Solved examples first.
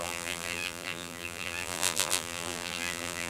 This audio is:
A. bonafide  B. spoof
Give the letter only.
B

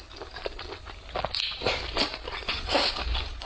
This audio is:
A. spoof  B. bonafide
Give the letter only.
B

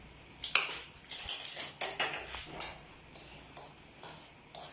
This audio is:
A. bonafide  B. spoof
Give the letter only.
A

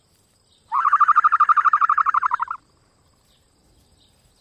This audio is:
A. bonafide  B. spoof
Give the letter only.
B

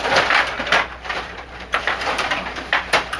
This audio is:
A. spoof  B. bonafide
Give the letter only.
A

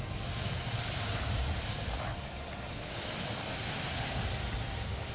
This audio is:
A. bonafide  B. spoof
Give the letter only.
B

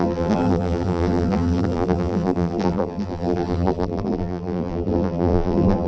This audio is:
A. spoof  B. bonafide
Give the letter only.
A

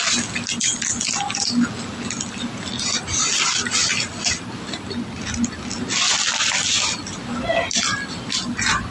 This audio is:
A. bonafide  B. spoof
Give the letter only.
A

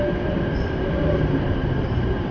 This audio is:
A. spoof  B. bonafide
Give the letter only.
A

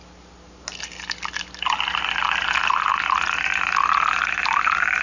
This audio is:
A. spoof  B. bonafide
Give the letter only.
B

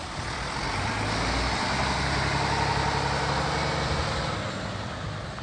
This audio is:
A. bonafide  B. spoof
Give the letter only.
A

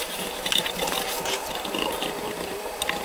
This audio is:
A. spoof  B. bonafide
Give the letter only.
A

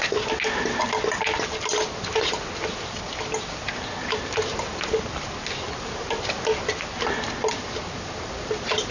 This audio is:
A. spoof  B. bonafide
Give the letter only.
B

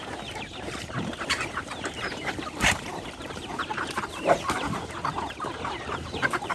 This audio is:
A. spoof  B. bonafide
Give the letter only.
A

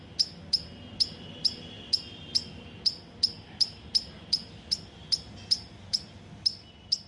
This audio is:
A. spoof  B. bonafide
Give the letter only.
B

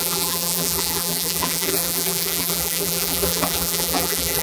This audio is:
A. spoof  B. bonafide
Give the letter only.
A